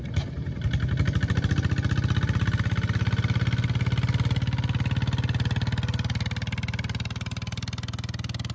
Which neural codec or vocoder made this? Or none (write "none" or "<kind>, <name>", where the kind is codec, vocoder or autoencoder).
none